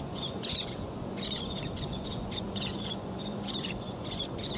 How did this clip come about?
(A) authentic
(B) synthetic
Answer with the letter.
B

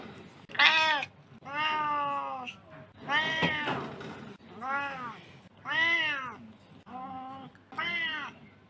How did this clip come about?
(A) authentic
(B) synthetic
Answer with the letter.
A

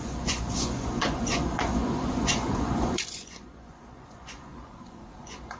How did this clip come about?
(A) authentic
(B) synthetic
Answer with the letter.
B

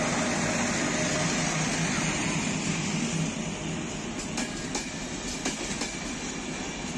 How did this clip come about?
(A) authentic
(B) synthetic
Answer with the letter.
A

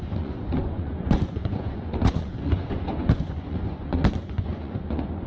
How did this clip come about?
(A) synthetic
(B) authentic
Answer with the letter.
A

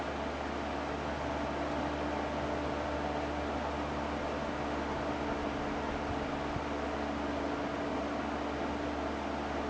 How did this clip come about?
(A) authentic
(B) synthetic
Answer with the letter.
A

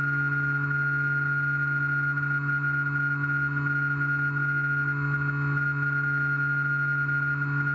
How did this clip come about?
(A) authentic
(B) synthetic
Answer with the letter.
A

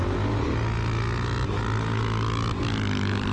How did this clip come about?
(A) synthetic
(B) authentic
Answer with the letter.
B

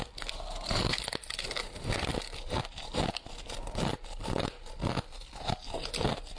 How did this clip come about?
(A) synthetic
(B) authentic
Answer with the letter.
B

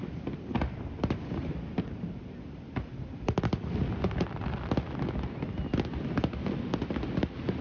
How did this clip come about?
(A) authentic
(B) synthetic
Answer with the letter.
A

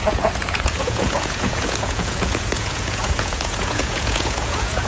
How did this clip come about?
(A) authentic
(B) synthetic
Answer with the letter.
B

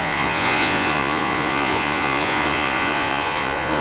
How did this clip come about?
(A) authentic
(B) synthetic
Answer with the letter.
B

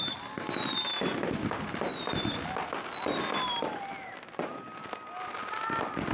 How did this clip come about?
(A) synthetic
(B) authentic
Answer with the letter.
B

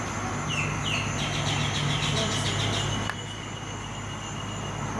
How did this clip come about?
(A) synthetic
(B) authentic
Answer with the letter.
B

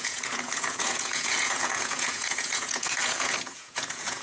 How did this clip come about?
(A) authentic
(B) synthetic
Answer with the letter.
B